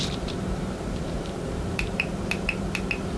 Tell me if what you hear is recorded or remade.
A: remade